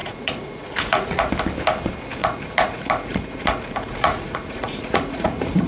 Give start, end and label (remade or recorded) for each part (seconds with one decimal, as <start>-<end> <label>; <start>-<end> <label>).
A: 0.0-1.3 remade; 1.3-2.2 recorded; 2.2-5.7 remade